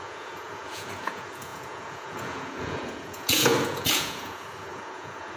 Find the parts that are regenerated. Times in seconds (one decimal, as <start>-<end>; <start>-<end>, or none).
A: 0.0-5.4